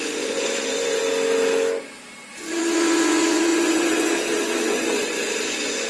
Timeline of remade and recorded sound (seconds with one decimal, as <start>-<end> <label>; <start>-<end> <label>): 0.0-1.0 remade; 1.0-2.3 recorded; 2.3-5.9 remade